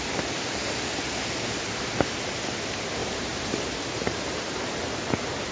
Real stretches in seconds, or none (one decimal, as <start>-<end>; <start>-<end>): 0.0-3.0

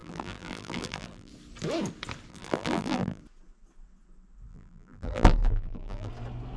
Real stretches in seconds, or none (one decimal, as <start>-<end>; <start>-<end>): 1.3-2.3; 3.2-4.5; 6.1-6.6